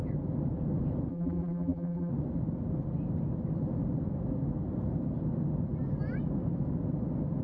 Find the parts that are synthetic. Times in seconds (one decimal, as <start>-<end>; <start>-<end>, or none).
1.1-2.1